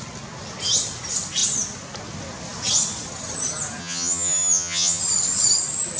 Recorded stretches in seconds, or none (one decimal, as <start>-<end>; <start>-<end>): 0.0-3.8; 5.0-6.0